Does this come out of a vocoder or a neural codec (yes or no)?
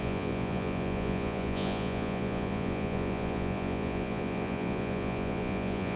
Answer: yes